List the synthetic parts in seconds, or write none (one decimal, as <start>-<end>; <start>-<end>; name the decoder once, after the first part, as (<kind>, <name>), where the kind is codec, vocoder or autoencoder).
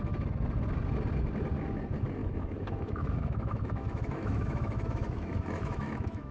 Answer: 2.2-6.3 (autoencoder, DAC-VAE)